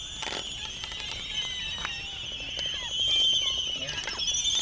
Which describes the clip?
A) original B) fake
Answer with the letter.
A